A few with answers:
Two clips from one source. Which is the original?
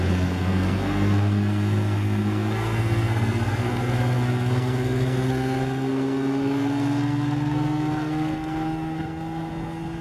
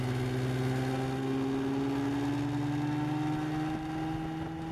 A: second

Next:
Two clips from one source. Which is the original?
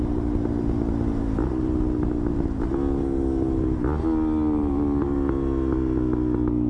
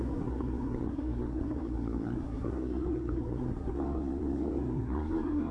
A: first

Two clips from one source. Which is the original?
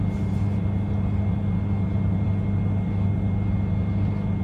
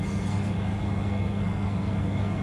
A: first